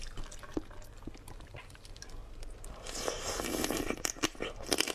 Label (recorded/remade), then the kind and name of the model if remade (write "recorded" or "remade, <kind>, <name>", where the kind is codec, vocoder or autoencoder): recorded